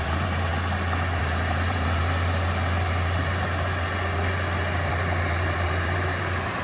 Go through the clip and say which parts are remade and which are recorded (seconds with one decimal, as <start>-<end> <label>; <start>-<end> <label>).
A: 0.0-0.5 remade; 0.5-1.2 recorded; 1.2-2.0 remade; 2.0-4.9 recorded; 4.9-6.6 remade